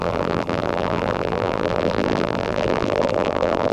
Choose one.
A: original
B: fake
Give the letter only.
B